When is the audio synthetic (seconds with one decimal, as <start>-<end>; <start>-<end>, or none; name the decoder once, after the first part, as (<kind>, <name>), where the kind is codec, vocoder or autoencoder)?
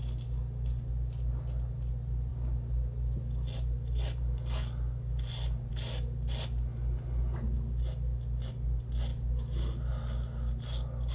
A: none